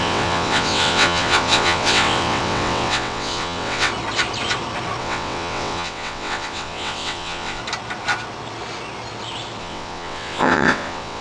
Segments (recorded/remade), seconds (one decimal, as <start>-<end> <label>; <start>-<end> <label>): 0.0-3.9 remade; 3.9-5.0 recorded; 5.0-7.6 remade; 7.6-9.6 recorded; 9.6-11.2 remade